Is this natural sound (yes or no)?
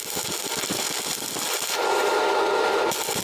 yes